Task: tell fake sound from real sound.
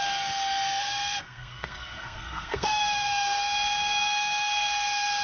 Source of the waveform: fake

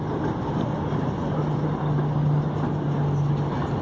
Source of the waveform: real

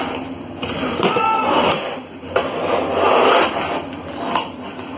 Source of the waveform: real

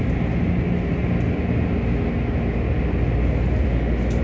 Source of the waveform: real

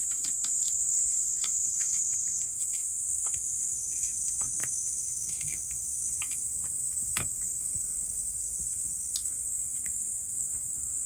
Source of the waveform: fake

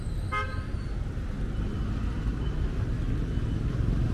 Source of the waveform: real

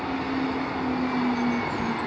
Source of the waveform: real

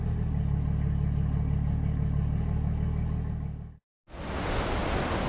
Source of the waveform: real